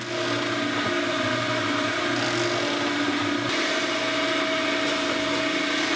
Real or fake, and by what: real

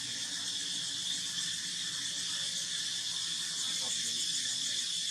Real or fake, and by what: real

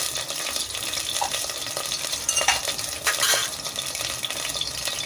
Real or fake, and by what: real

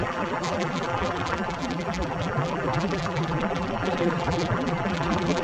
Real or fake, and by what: fake, vocoder, BigVGAN v2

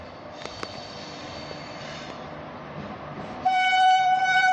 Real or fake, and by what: fake, vocoder, BigVGAN v2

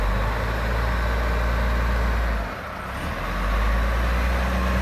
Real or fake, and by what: real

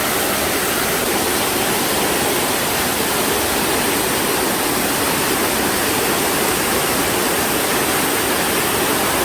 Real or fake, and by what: real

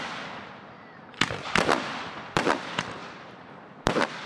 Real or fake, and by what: fake, vocoder, BigVGAN v2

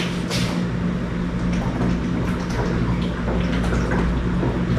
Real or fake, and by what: real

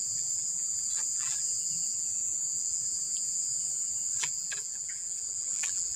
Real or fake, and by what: fake, vocoder, BigVGAN v2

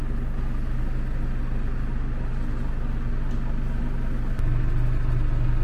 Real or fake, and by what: real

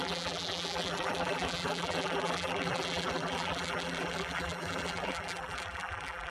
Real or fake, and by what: fake, vocoder, BigVGAN v2